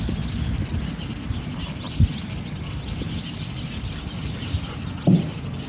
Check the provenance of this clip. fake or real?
real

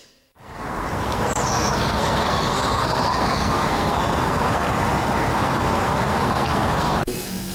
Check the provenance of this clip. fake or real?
fake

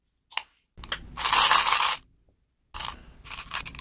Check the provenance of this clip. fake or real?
real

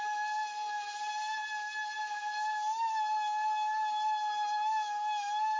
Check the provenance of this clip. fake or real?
real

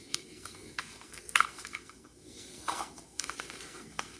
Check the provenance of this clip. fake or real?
fake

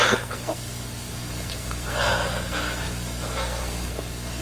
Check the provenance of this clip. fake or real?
fake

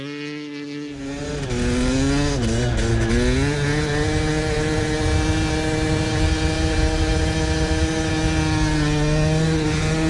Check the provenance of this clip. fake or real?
real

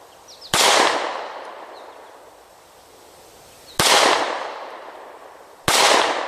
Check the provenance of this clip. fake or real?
real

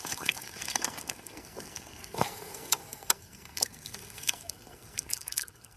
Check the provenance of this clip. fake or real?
fake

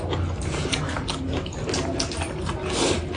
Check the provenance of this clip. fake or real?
real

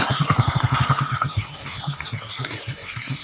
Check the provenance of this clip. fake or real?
fake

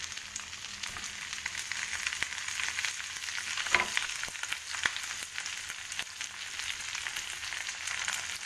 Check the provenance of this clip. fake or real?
real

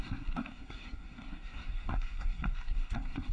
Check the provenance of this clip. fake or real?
fake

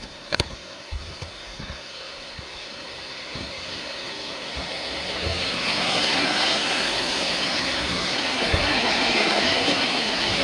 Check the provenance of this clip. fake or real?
fake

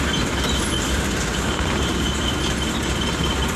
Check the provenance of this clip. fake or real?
real